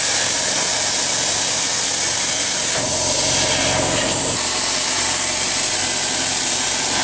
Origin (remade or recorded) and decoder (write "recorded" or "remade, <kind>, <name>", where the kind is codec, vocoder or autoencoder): recorded